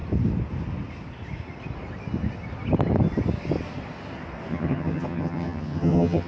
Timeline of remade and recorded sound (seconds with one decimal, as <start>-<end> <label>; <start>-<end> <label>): 0.0-4.5 recorded; 4.5-6.3 remade